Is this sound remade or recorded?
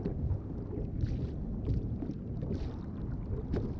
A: recorded